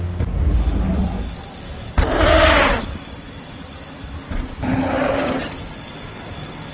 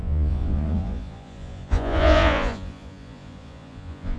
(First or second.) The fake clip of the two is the second